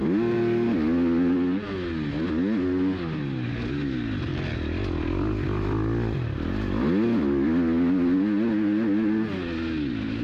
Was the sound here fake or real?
real